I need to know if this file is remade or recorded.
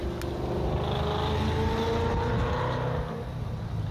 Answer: recorded